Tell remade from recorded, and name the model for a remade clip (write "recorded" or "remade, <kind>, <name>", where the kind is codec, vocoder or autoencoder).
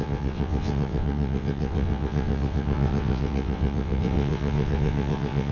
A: remade, vocoder, WaveNeXt